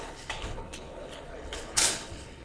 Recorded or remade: remade